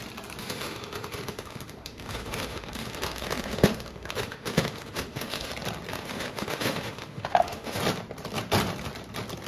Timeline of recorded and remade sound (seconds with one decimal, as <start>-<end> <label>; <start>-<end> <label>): 0.0-0.4 recorded; 0.4-5.5 remade; 5.5-5.9 recorded; 5.9-7.8 remade; 7.8-9.5 recorded